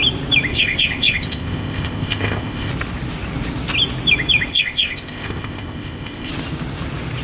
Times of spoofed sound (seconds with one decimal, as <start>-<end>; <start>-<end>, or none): 0.5-2.7; 4.5-6.3